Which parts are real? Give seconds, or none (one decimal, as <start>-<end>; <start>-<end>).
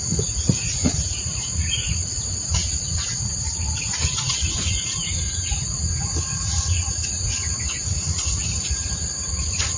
none